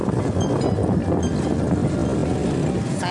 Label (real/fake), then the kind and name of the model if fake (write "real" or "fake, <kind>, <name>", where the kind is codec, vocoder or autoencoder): real